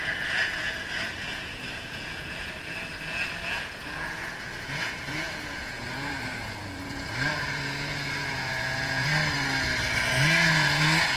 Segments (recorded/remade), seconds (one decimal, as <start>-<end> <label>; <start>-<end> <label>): 0.0-9.1 remade; 9.1-10.2 recorded; 10.2-11.2 remade